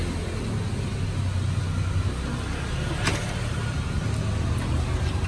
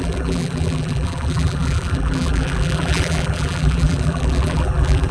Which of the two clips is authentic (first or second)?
first